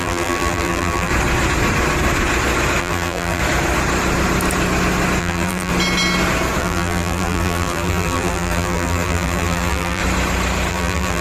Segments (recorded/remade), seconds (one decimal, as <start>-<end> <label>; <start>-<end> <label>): 0.0-1.1 remade; 1.1-2.8 recorded; 2.8-3.4 remade; 3.4-5.2 recorded; 5.2-5.7 remade; 5.7-6.6 recorded; 6.6-10.0 remade; 10.0-10.7 recorded; 10.7-11.2 remade